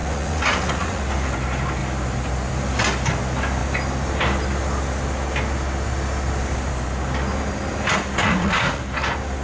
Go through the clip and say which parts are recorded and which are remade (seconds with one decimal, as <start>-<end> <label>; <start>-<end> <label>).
0.0-1.0 remade; 1.0-8.2 recorded; 8.2-8.8 remade; 8.8-9.4 recorded